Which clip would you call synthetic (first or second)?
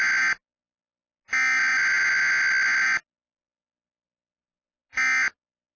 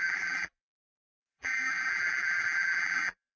second